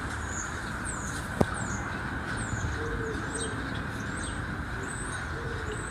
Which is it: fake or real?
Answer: real